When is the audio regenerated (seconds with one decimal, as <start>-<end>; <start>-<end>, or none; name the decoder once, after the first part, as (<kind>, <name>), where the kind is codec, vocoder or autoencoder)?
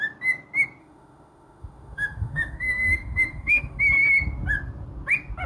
0.8-3.8 (autoencoder, DAC-VAE)